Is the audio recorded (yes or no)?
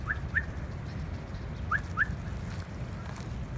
yes